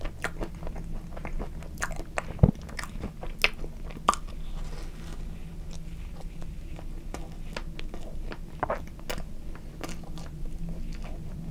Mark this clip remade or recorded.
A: recorded